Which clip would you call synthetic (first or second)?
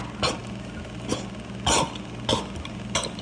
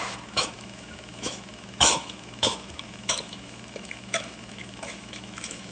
second